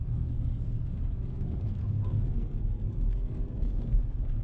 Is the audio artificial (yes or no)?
yes